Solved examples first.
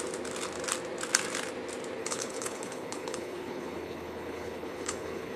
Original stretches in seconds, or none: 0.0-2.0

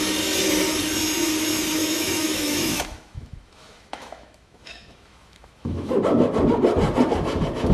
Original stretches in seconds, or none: 0.0-1.8; 5.9-7.7

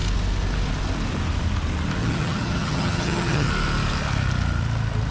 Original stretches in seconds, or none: 0.0-2.0; 3.5-5.1

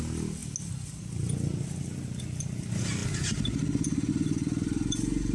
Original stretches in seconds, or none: 0.0-5.3

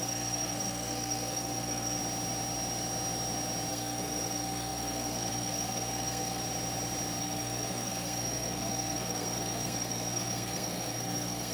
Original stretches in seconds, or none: 2.0-3.7; 6.4-7.2

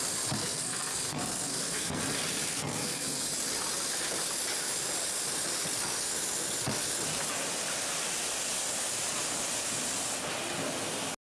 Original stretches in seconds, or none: 0.0-0.4; 2.0-2.5; 3.3-11.3